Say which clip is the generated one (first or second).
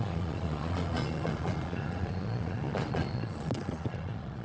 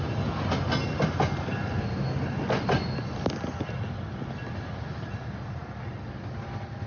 first